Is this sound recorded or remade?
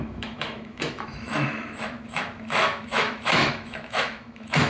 remade